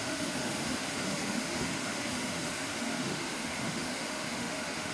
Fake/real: fake